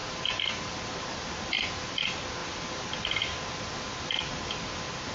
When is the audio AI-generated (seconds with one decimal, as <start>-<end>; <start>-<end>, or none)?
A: none